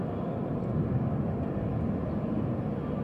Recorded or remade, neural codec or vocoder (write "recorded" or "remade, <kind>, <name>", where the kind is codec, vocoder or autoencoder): recorded